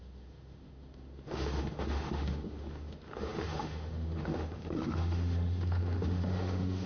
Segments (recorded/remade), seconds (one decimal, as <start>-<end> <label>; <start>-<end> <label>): 0.0-6.9 remade